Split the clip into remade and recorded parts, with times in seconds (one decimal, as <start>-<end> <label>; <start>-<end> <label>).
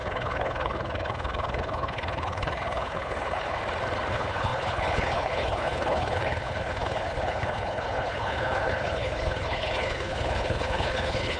0.0-3.6 remade; 3.6-4.1 recorded; 4.1-11.4 remade